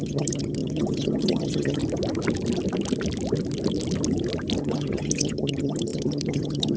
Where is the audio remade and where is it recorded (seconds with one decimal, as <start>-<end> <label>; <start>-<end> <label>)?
0.0-1.8 remade; 1.8-4.6 recorded; 4.6-6.8 remade